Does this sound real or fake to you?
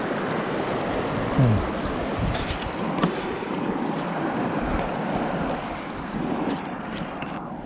real